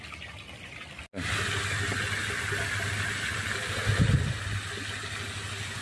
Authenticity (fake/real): real